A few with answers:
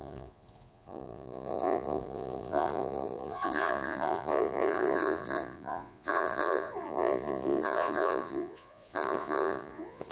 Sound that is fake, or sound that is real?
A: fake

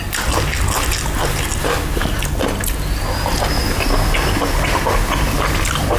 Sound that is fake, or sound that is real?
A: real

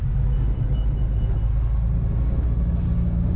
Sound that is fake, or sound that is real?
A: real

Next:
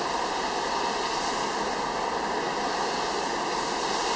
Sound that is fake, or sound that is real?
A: real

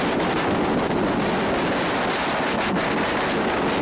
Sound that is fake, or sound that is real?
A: real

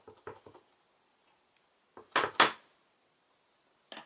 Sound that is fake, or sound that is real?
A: real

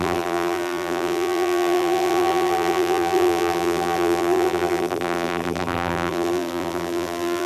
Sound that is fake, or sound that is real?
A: fake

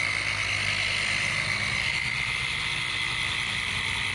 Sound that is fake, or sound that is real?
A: real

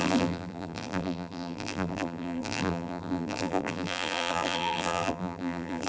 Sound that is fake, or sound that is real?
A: fake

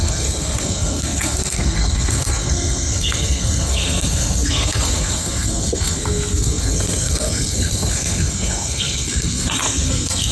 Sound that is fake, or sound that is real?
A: fake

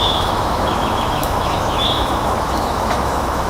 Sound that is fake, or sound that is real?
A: fake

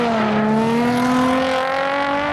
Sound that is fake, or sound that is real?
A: real